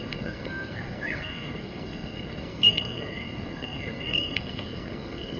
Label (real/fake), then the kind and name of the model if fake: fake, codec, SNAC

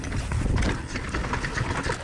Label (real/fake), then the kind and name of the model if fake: real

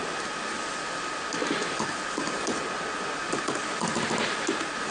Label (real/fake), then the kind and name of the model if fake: real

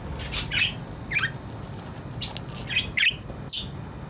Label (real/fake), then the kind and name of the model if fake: real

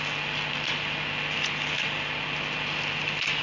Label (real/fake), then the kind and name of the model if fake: real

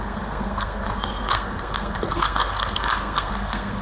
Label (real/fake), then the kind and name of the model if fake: fake, codec, SNAC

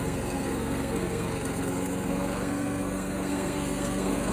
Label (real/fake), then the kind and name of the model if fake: fake, codec, SNAC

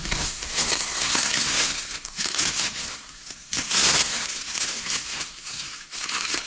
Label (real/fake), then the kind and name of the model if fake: fake, codec, SNAC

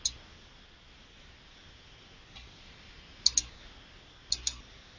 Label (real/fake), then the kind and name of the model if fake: real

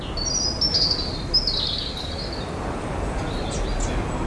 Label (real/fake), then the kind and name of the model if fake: real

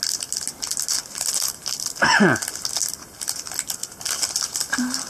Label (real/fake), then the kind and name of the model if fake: real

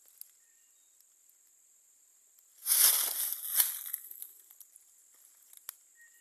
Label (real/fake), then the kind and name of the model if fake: real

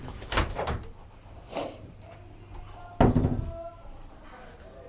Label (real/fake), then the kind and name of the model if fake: real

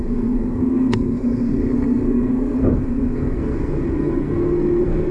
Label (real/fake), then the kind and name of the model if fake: fake, codec, SNAC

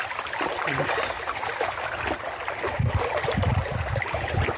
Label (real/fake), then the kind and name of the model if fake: real